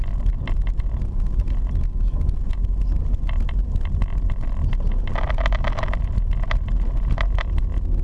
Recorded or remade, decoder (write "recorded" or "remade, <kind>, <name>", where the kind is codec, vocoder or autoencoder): recorded